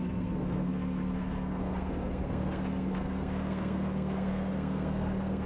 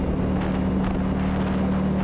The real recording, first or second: second